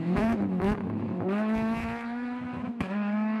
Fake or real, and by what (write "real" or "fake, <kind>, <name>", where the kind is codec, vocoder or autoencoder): fake, autoencoder, DAC-VAE